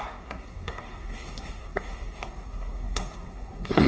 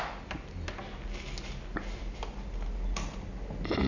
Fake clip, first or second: first